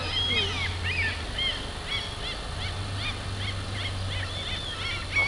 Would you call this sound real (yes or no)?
yes